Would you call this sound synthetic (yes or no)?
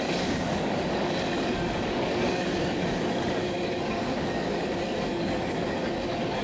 yes